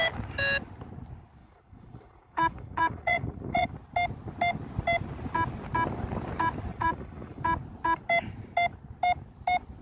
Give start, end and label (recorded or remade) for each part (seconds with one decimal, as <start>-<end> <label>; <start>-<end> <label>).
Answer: 0.0-1.4 recorded; 1.4-3.7 remade; 3.7-6.7 recorded; 6.7-7.4 remade; 7.4-9.8 recorded